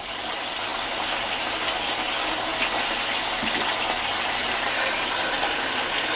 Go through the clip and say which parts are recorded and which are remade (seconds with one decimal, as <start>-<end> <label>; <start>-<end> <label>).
0.0-4.1 recorded; 4.1-5.0 remade; 5.0-6.2 recorded